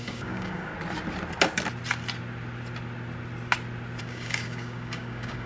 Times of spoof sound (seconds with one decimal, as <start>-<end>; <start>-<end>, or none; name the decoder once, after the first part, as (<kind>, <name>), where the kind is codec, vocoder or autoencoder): 0.0-0.7 (codec, DAC); 4.0-5.5